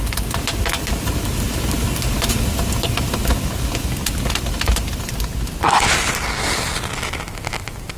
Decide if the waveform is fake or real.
real